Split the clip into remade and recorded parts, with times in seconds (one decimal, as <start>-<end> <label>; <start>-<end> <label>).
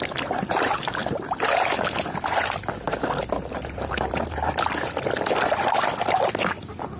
0.0-7.0 recorded